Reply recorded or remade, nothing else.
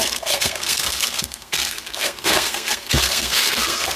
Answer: remade